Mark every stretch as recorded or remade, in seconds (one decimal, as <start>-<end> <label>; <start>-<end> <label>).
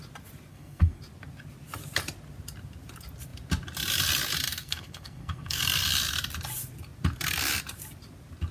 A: 0.0-0.5 recorded; 0.5-1.0 remade; 1.0-4.5 recorded; 4.5-5.6 remade; 5.6-8.5 recorded